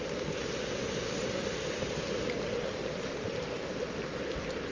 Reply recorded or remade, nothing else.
recorded